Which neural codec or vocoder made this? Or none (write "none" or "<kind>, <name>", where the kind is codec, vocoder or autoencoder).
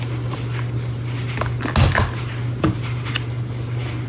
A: none